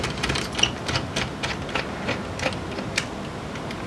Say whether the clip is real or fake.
real